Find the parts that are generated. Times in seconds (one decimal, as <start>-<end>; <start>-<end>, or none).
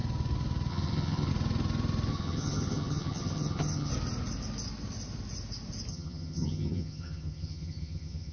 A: 0.7-1.3; 2.1-3.9; 5.9-8.3